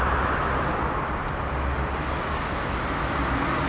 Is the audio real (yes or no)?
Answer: yes